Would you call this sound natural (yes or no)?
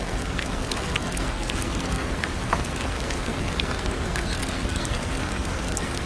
no